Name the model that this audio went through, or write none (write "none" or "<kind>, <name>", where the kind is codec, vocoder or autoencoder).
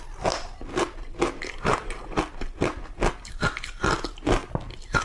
none